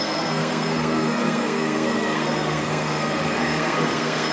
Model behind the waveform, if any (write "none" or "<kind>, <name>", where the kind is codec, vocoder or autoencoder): codec, SNAC